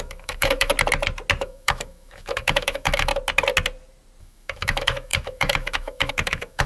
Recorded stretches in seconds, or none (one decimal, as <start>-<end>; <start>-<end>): 0.7-1.4; 3.1-4.2